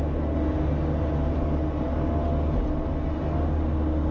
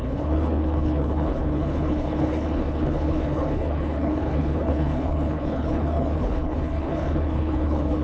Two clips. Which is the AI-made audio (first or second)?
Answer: second